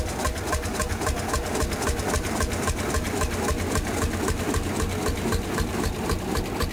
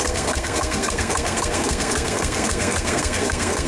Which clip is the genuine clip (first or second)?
first